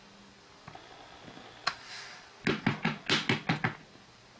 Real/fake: real